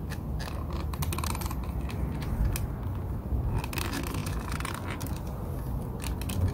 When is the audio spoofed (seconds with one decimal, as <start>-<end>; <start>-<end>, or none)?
none